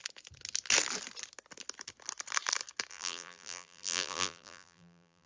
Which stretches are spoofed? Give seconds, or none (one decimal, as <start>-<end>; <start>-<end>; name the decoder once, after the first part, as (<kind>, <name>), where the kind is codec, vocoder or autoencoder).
2.9-5.3 (vocoder, BigVGAN v2)